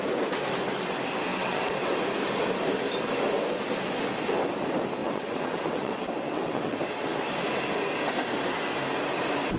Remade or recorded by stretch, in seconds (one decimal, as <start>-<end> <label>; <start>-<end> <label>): 0.0-1.3 recorded; 1.3-2.0 remade; 2.0-5.0 recorded; 5.0-6.8 remade; 6.8-9.6 recorded